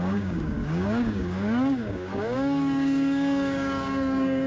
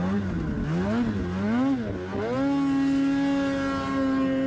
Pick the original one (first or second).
second